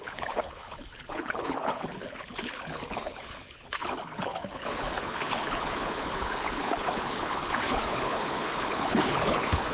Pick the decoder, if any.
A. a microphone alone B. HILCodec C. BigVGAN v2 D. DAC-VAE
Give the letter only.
B